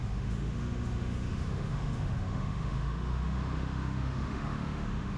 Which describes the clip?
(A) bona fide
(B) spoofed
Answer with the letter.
B